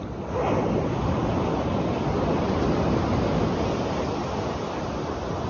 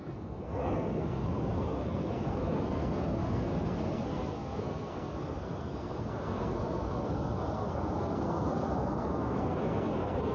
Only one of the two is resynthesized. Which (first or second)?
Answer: second